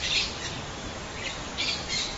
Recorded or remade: recorded